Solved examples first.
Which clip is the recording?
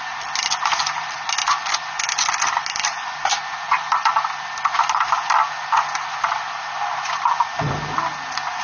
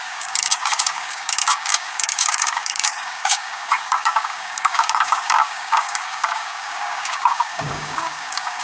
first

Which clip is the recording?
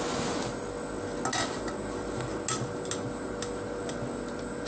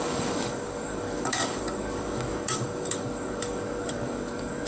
first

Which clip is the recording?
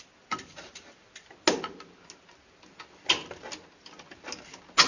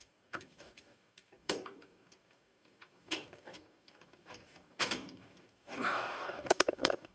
first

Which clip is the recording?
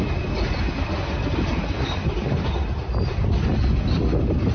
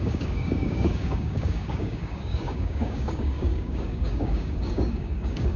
first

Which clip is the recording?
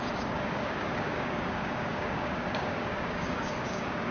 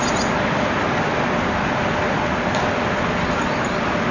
second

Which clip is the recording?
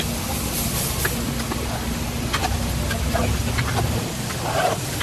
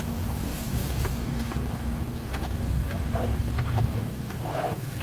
first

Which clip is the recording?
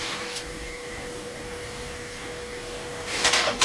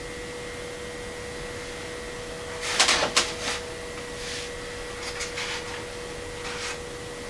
second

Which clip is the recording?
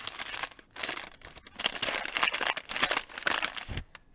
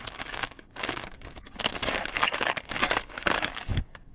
first